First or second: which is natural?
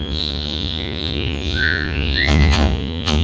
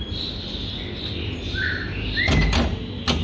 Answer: second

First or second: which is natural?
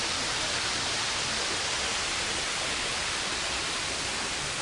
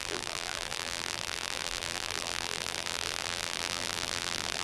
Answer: first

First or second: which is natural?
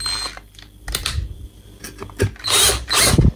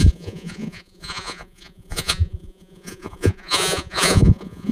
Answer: first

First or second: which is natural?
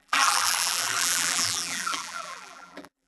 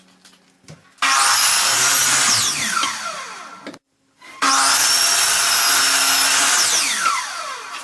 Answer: second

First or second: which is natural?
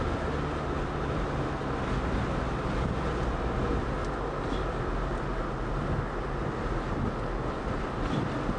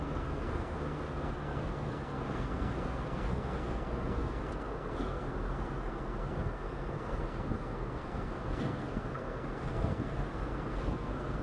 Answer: first